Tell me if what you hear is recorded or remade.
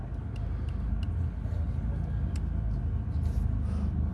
recorded